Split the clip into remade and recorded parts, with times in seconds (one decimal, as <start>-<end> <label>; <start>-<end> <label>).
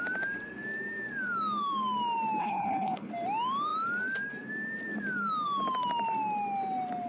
0.0-2.4 recorded; 2.4-3.1 remade; 3.1-7.1 recorded